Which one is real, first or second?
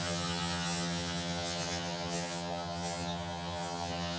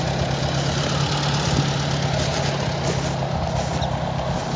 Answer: second